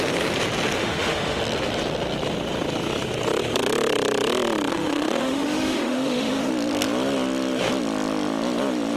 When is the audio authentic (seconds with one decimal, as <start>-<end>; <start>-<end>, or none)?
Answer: 0.0-0.8; 1.4-4.7; 6.5-9.0